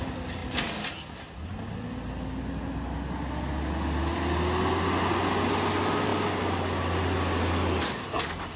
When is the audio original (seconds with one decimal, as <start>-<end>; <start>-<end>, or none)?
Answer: 0.0-8.6